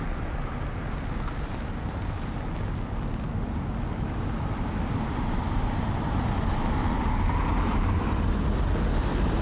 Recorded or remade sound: recorded